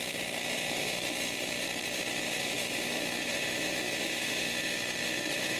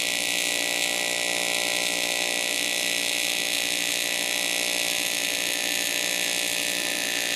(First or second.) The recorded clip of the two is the second